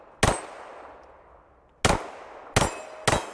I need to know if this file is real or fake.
real